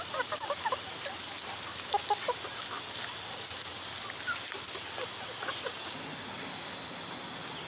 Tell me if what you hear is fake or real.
real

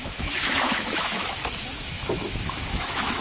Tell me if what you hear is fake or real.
fake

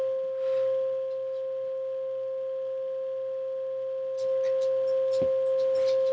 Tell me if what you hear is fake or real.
real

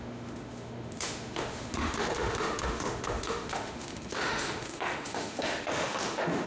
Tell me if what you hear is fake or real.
fake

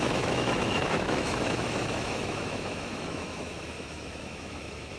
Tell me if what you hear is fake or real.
fake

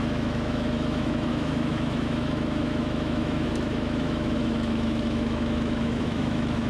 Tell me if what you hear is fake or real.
fake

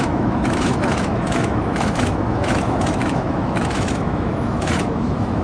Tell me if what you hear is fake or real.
fake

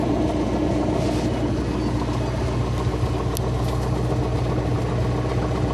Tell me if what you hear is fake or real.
real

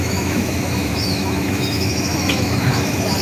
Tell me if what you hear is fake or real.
fake